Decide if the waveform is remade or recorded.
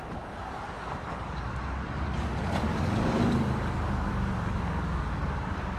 remade